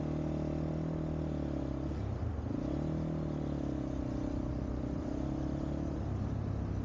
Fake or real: real